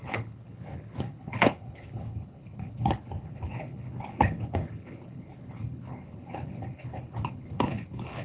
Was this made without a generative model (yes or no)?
no